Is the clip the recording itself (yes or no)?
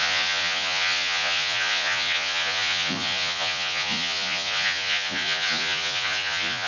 no